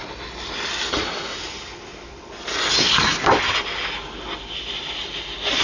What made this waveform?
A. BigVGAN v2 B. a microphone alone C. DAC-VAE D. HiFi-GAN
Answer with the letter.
B